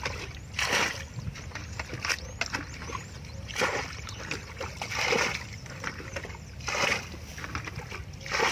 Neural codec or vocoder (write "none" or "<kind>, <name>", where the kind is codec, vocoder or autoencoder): none